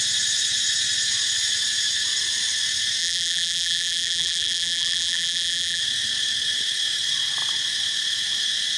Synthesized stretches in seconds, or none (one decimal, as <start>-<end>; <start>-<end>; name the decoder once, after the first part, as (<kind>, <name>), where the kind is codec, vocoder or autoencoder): 3.0-5.8 (vocoder, BigVGAN v2)